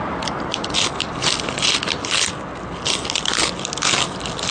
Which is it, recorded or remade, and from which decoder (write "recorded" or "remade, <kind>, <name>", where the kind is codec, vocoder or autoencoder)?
recorded